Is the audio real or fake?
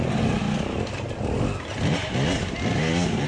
real